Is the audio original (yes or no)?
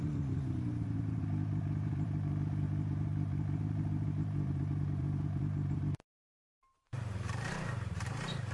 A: no